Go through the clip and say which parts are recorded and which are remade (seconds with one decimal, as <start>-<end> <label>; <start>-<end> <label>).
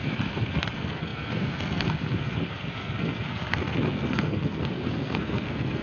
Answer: 0.0-5.8 remade